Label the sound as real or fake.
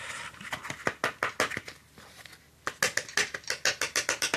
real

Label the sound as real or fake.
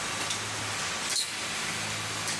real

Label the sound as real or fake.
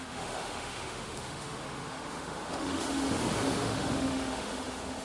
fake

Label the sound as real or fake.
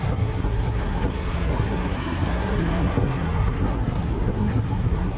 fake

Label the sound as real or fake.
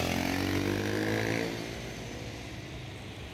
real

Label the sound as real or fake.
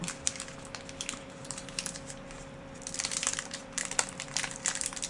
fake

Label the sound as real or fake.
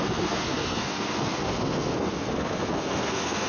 fake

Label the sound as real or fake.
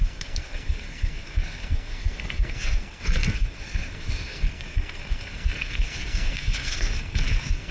fake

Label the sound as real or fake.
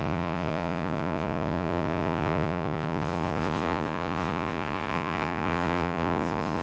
fake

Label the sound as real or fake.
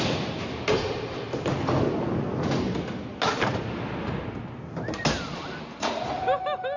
real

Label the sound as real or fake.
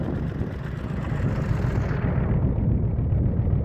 real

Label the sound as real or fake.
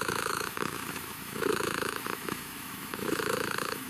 fake